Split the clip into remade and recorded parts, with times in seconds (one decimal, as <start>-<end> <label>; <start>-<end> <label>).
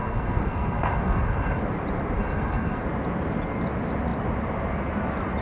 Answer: 0.0-1.6 remade; 1.6-2.2 recorded; 2.2-2.8 remade; 2.8-5.4 recorded